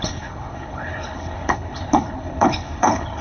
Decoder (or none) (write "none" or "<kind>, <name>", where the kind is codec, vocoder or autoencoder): codec, HILCodec